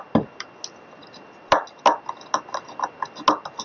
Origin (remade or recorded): recorded